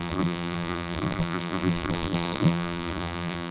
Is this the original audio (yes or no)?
no